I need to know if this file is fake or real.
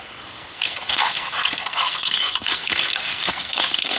fake